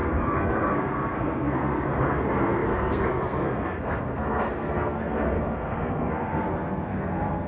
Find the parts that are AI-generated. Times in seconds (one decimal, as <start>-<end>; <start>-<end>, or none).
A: 0.0-7.5